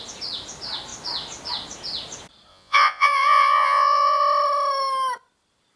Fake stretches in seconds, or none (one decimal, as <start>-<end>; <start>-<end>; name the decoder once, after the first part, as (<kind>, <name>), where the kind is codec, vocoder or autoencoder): 2.5-4.2 (vocoder, Vocos)